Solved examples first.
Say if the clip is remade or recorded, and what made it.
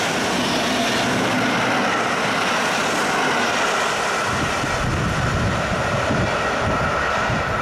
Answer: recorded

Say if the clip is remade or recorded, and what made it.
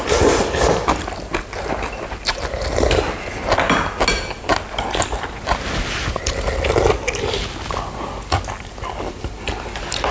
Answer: recorded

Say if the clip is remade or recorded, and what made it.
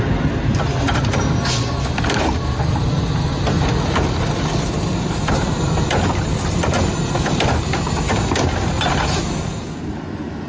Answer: recorded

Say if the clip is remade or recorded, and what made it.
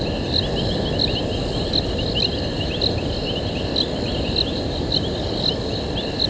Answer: recorded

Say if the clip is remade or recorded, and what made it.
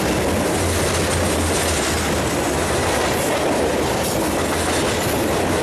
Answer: recorded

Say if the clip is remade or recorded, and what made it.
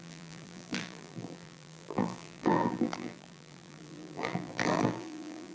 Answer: remade, vocoder, BigVGAN v2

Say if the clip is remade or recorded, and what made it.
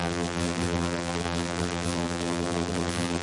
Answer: remade, vocoder, BigVGAN v2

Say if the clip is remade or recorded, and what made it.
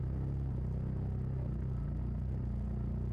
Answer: recorded